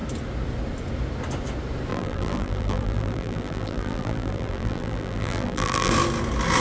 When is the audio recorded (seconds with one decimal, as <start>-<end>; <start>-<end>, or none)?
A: 0.0-1.9; 5.9-6.6